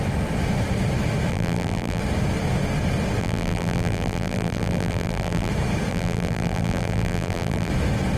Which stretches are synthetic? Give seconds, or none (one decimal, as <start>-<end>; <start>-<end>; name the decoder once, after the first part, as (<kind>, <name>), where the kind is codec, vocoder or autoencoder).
1.3-2.0 (vocoder, BigVGAN v2); 3.2-5.5; 5.9-7.7